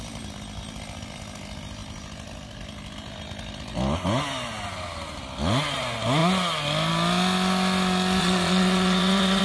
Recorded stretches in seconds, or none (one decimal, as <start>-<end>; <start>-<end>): 0.0-8.2